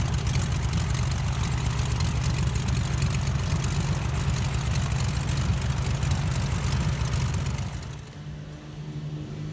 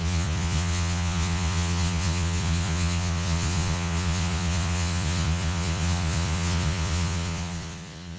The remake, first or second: second